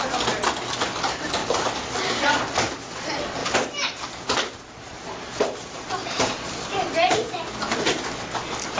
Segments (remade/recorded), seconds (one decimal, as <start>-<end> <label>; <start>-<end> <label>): 0.0-1.4 recorded; 1.4-2.8 remade; 2.8-3.4 recorded; 3.4-7.3 remade; 7.3-8.8 recorded